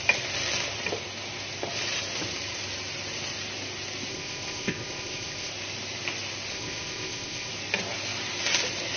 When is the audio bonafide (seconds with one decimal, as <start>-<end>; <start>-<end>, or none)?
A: 0.0-4.1; 5.5-6.5; 7.5-9.0